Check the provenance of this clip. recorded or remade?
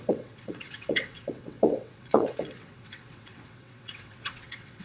remade